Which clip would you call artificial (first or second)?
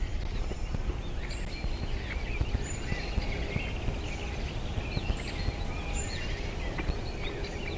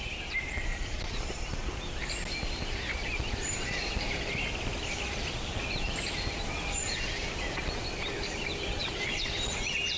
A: second